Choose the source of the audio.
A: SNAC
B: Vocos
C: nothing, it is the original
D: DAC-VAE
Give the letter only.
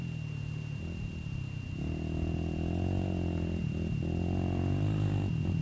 C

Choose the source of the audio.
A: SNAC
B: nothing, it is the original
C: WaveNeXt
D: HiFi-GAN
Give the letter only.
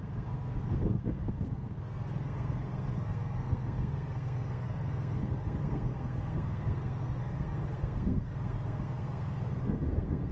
A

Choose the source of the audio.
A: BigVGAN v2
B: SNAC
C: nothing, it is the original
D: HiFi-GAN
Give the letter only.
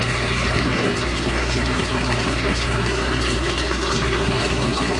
B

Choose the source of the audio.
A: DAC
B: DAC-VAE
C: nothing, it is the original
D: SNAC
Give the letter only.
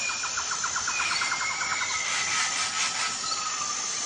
C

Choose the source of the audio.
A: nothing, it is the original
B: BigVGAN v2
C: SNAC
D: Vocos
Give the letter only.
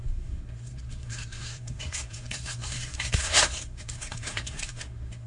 C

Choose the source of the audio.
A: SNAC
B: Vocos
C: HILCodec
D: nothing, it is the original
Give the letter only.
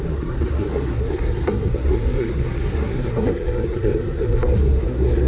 A